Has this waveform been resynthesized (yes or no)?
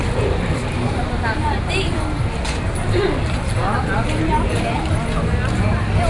no